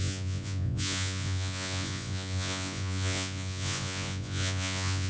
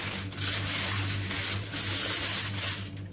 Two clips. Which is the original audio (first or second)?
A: second